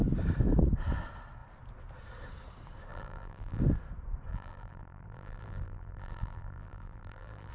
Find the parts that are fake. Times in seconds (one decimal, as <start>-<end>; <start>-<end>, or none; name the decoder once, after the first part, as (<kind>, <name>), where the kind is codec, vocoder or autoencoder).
2.9-3.6 (vocoder, BigVGAN v2); 4.3-7.5